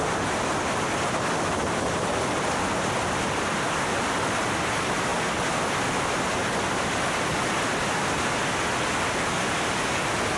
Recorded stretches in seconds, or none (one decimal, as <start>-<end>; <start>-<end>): 0.0-10.4